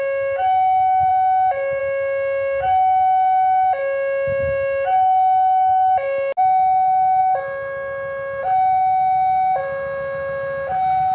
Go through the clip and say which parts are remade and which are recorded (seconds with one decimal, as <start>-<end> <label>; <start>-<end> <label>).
0.0-11.1 recorded